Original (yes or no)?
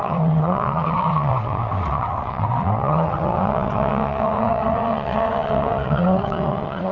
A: no